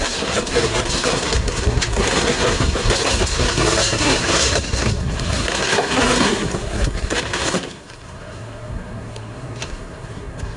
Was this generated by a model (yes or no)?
yes